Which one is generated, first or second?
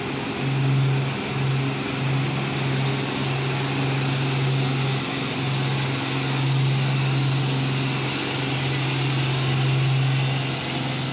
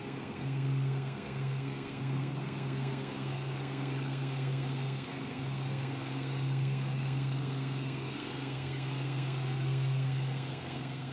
second